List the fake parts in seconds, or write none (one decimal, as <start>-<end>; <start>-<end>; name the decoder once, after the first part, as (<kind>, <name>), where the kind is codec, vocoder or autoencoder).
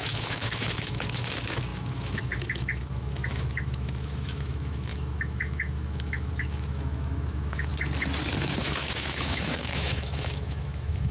0.0-7.7 (autoencoder, DAC-VAE); 8.4-11.1